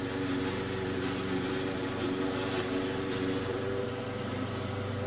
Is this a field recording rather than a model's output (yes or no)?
no